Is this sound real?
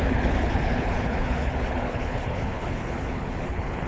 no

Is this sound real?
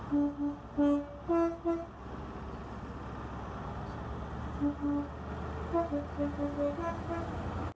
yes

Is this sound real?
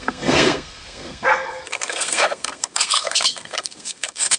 no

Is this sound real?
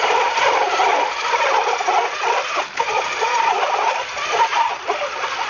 yes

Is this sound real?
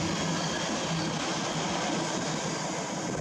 yes